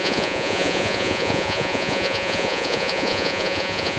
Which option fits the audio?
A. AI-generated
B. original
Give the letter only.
A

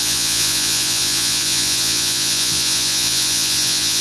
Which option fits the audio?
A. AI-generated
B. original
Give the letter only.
A